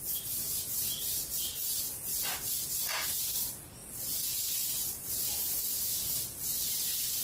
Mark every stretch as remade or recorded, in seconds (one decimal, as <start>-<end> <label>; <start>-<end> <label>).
0.0-7.2 recorded